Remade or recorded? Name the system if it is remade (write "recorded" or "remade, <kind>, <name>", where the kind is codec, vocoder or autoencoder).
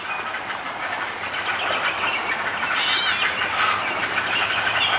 recorded